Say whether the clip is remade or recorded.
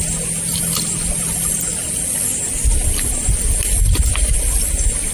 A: recorded